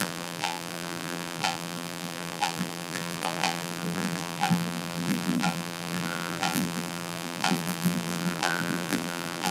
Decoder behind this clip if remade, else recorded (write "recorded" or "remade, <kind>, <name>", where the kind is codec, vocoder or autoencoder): remade, vocoder, BigVGAN v2